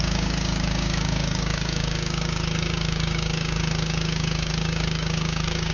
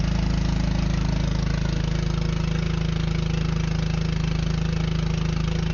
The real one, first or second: second